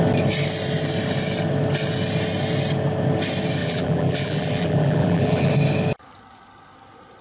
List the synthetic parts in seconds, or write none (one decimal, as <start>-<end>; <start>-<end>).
3.6-5.5